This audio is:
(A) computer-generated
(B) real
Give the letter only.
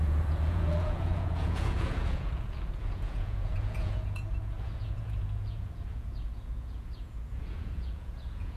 A